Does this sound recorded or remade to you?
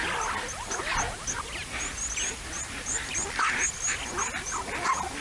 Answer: recorded